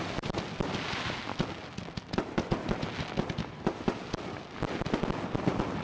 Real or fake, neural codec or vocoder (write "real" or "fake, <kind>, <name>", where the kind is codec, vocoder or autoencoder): real